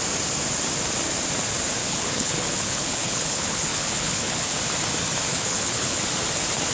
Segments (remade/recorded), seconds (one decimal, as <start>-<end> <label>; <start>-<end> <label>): 0.0-1.8 recorded; 1.8-4.6 remade; 4.6-5.3 recorded; 5.3-6.0 remade; 6.0-6.7 recorded